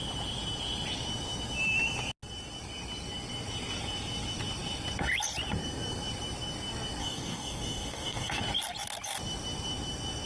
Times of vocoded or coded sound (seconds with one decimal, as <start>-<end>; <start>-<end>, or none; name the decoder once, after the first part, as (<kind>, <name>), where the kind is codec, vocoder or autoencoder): 7.0-8.4 (codec, DAC)